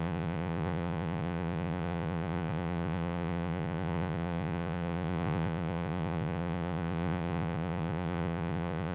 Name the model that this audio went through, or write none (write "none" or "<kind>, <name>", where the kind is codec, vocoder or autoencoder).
vocoder, Vocos